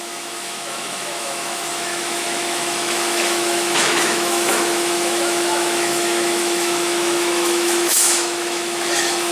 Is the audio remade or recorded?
remade